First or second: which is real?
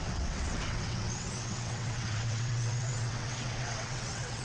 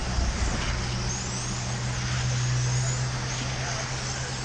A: second